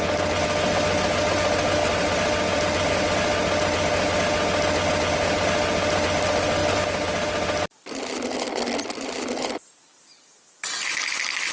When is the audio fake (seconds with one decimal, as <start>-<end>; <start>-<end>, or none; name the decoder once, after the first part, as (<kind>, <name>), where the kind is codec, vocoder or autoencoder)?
1.8-2.9 (vocoder, BigVGAN v2)